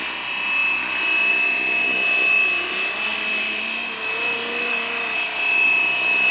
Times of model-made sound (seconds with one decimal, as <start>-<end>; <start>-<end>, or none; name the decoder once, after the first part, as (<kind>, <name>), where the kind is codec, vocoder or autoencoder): none